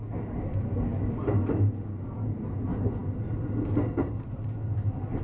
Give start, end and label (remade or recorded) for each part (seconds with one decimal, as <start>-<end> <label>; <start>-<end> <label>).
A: 0.0-5.2 recorded